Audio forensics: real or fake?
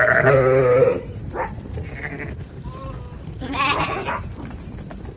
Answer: real